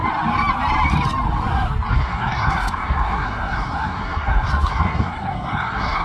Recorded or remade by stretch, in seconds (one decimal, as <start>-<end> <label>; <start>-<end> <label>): 0.0-1.9 recorded; 1.9-6.0 remade